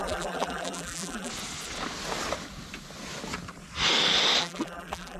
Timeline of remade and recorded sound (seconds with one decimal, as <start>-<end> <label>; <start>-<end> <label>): 0.0-1.3 remade; 1.3-4.4 recorded; 4.4-5.2 remade